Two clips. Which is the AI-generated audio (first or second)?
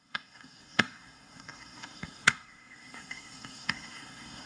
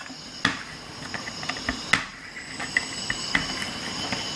first